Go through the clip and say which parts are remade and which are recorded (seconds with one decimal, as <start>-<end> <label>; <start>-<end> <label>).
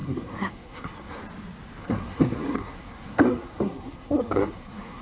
0.0-1.2 remade; 1.2-1.8 recorded; 1.8-5.0 remade